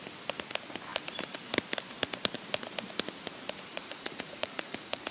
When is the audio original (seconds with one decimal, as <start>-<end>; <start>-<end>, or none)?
0.0-3.7